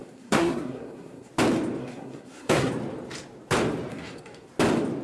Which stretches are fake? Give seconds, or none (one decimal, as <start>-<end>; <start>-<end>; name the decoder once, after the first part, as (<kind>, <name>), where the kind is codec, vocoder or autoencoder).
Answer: 0.0-1.3 (codec, SNAC); 1.8-2.7; 3.9-4.5